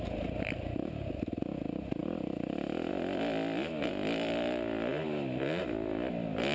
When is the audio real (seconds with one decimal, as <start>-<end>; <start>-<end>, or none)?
0.0-6.5